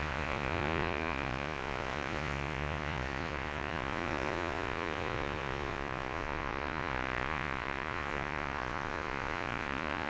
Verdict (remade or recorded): remade